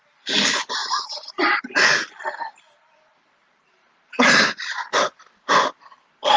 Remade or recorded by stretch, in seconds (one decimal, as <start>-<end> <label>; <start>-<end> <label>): 0.0-0.8 recorded; 0.8-1.6 remade; 1.6-3.4 recorded; 3.4-4.6 remade; 4.6-6.4 recorded

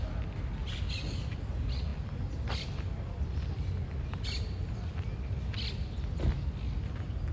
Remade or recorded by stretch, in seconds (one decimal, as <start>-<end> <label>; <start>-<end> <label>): 0.0-7.3 recorded

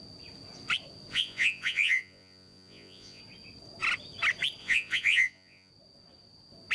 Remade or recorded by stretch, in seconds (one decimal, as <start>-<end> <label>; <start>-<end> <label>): 0.0-1.1 recorded; 1.1-3.2 remade; 3.2-4.6 recorded; 4.6-5.7 remade; 5.7-6.7 recorded

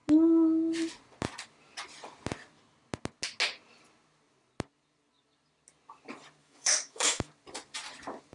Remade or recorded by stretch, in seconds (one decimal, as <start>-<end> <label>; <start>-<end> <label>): 0.0-6.4 recorded; 6.4-7.3 remade; 7.3-8.3 recorded

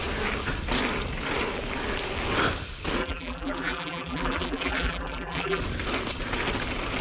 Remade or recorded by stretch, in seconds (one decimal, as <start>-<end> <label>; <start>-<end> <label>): 0.0-3.0 recorded; 3.0-5.6 remade; 5.6-7.0 recorded

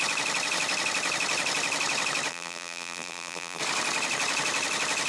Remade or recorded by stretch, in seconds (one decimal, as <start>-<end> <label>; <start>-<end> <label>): 0.0-2.3 recorded; 2.3-3.6 remade; 3.6-5.1 recorded

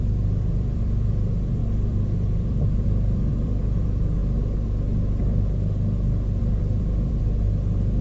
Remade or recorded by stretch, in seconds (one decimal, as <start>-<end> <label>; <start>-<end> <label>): 0.0-4.2 remade; 4.2-6.4 recorded; 6.4-8.0 remade